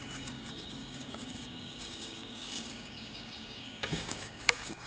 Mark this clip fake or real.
fake